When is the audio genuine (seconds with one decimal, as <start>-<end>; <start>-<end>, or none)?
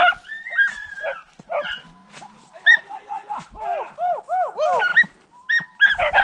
0.0-2.0; 4.2-6.2